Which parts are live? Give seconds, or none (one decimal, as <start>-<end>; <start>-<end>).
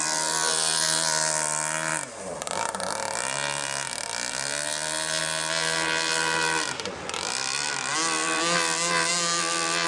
0.0-9.9